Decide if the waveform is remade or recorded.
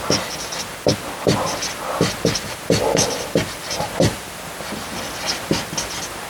recorded